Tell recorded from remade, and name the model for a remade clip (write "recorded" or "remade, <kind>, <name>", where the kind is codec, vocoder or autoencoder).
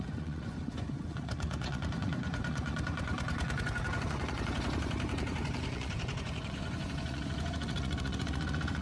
remade, vocoder, Vocos